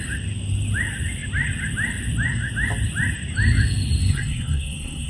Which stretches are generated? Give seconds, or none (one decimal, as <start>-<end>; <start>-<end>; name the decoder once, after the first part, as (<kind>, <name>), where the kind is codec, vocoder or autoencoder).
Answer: 4.0-5.1 (codec, SNAC)